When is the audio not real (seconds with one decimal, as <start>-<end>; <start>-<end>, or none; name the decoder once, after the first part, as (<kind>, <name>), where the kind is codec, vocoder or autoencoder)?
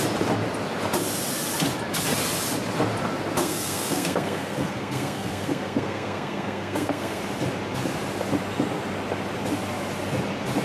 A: 3.4-7.2 (codec, SNAC)